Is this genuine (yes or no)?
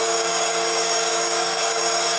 no